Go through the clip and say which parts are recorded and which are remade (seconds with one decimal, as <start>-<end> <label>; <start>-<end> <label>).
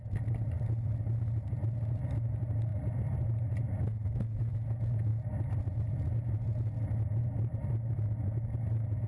0.0-9.1 recorded